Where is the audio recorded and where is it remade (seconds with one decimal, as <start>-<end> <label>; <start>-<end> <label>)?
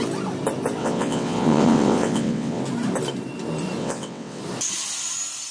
0.0-0.8 recorded; 0.8-2.6 remade; 2.6-3.8 recorded; 3.8-4.4 remade; 4.4-5.5 recorded